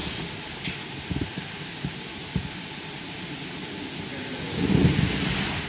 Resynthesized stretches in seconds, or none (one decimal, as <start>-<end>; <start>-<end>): 0.0-3.4